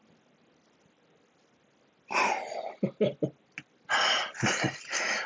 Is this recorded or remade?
recorded